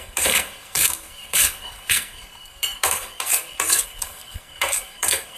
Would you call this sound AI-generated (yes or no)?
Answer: yes